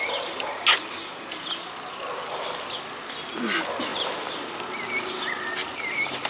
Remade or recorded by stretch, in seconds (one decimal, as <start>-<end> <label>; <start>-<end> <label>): 0.0-3.9 recorded; 3.9-4.6 remade; 4.6-5.6 recorded; 5.6-6.3 remade